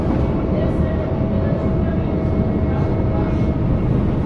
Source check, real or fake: real